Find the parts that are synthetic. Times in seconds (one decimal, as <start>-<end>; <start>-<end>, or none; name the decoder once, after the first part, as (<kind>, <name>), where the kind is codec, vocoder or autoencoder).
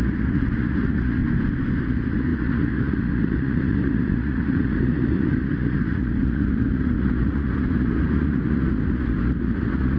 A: 0.0-1.2 (vocoder, Vocos); 1.8-10.0